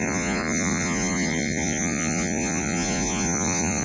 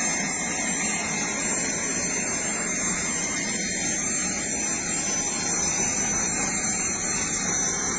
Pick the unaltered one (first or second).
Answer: second